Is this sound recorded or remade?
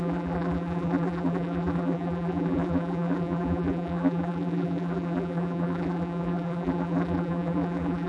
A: remade